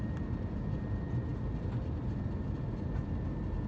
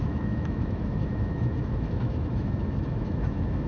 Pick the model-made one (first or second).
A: second